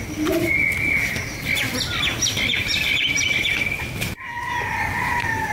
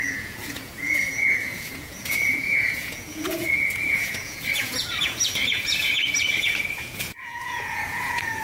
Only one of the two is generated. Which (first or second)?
second